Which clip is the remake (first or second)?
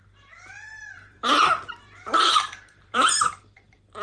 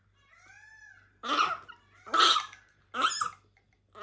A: first